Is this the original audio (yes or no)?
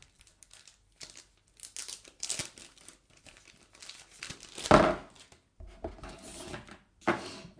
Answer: yes